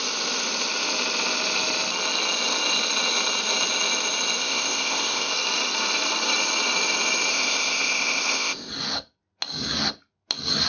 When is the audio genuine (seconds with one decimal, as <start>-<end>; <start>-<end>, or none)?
0.0-4.4; 5.3-7.3; 8.7-10.7